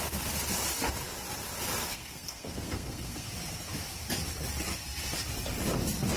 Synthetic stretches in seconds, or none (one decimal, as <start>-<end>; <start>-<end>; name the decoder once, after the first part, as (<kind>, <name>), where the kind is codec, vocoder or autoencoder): 1.8-3.3 (codec, SNAC)